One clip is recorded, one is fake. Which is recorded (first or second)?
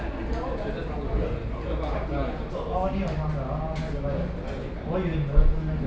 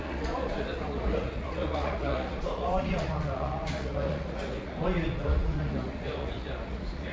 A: first